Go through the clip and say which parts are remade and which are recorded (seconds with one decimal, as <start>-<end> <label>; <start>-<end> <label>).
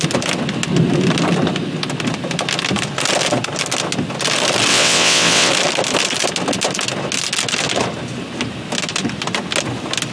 0.0-4.7 recorded; 4.7-5.5 remade; 5.5-10.1 recorded